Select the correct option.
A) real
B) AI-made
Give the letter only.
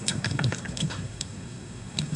B